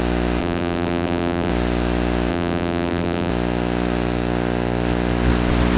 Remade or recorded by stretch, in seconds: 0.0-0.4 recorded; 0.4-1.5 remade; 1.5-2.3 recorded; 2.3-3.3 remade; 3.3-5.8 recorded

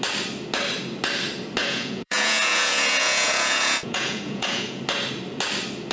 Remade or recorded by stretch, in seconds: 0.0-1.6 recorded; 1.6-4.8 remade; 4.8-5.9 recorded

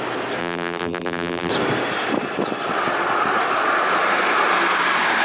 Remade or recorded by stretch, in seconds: 0.0-0.4 recorded; 0.4-1.5 remade; 1.5-5.2 recorded